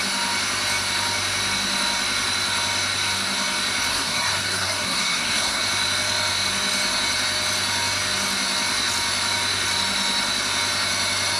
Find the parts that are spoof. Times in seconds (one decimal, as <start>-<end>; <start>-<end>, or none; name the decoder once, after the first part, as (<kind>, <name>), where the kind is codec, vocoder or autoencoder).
3.9-5.6 (codec, SNAC)